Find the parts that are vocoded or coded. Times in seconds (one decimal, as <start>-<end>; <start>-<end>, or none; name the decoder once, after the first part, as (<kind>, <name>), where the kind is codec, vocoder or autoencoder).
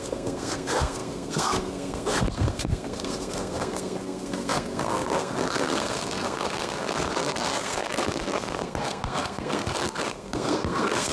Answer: 0.0-11.1 (codec, SNAC)